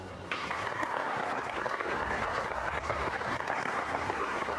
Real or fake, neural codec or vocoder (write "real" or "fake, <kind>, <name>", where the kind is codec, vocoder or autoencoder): fake, codec, SNAC